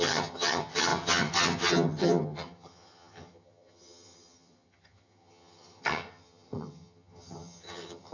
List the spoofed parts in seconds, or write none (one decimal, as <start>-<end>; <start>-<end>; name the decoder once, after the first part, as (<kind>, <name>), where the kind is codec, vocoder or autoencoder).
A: 0.0-8.1 (vocoder, HiFi-GAN)